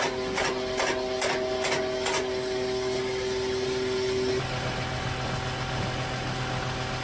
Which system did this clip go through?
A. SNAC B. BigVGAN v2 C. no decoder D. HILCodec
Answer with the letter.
C